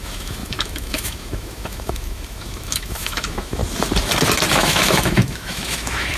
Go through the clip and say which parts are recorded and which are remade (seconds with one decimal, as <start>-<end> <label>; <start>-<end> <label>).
0.0-3.6 remade; 3.6-4.5 recorded; 4.5-6.2 remade